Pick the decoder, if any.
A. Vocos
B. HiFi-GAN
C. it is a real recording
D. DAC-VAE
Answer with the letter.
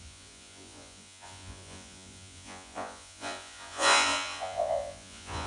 A